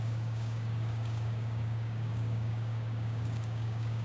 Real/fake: fake